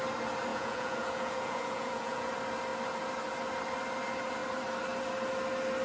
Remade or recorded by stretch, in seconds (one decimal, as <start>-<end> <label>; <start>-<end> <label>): 0.0-0.5 recorded; 0.5-2.3 remade; 2.3-5.8 recorded